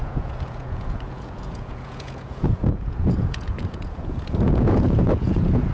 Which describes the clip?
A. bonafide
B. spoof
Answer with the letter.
B